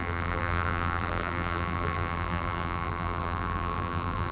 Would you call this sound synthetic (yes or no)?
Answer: yes